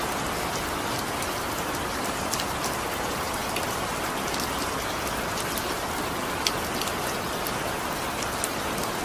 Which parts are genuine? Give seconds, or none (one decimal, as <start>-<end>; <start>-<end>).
0.0-9.0